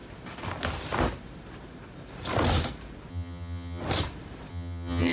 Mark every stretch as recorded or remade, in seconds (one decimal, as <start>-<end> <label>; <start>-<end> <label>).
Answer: 0.0-3.1 recorded; 3.1-3.8 remade; 3.8-4.5 recorded; 4.5-5.1 remade